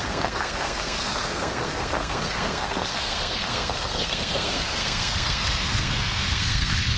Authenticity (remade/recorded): remade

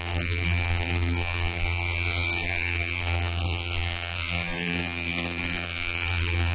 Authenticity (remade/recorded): remade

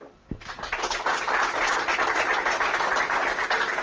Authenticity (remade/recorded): recorded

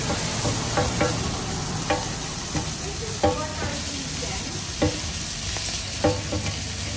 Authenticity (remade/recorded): recorded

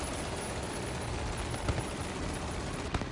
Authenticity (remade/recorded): recorded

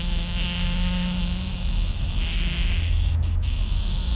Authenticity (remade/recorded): remade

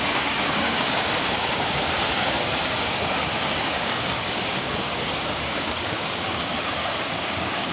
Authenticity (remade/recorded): remade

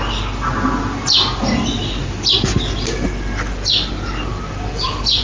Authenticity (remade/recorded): recorded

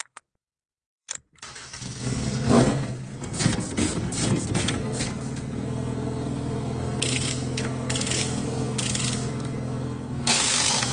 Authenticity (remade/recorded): remade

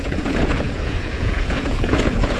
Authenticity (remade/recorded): remade